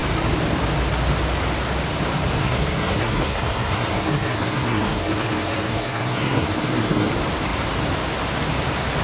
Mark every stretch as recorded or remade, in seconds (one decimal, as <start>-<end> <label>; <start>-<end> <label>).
0.0-2.4 recorded; 2.4-7.1 remade; 7.1-9.0 recorded